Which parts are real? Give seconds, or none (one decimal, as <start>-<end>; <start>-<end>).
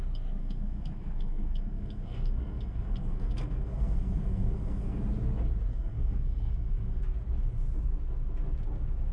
0.0-0.4; 5.0-5.7; 7.0-9.1